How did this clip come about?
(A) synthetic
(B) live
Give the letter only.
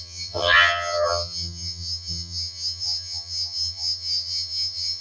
A